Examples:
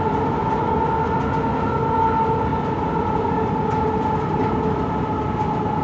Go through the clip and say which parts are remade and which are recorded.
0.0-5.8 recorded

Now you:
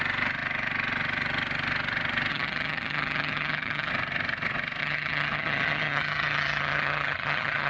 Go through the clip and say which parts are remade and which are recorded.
0.0-2.3 recorded; 2.3-3.9 remade; 3.9-4.8 recorded; 4.8-7.7 remade

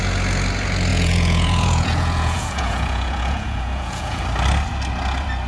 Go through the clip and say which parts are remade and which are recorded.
0.0-0.9 recorded; 0.9-4.2 remade; 4.2-5.5 recorded

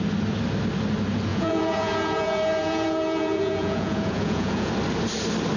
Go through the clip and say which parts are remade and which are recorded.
0.0-1.3 recorded; 1.3-4.7 remade; 4.7-5.6 recorded

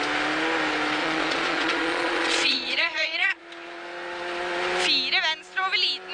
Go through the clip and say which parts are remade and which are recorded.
0.0-1.0 recorded; 1.0-3.4 remade; 3.4-6.1 recorded

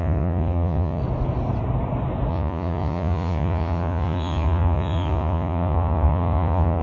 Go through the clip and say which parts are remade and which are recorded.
0.0-1.0 remade; 1.0-2.3 recorded; 2.3-6.8 remade